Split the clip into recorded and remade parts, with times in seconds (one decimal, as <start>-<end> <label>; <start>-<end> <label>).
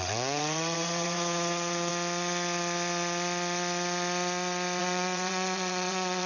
0.0-1.9 remade; 1.9-4.8 recorded; 4.8-6.3 remade